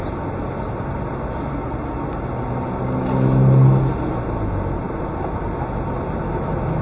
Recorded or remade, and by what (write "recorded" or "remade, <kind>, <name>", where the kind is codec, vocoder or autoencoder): recorded